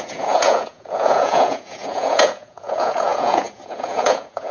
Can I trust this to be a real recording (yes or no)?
no